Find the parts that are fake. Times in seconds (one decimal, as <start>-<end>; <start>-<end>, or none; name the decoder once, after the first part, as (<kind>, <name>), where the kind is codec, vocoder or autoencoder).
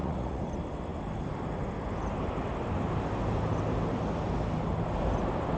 0.0-0.5 (vocoder, Vocos)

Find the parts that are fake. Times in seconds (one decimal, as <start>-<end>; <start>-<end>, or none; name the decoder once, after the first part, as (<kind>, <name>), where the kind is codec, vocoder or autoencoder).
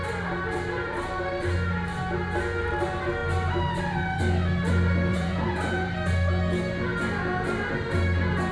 5.1-5.9 (vocoder, Vocos)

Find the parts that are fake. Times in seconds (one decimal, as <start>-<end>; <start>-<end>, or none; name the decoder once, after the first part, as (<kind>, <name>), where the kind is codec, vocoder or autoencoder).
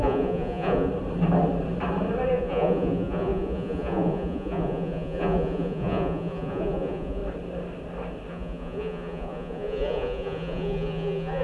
0.0-0.9 (vocoder, Vocos); 2.3-7.2; 8.3-11.4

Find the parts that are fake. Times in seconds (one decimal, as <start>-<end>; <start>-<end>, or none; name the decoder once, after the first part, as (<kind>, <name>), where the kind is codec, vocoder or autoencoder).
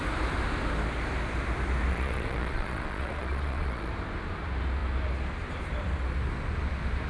1.9-3.9 (vocoder, Vocos)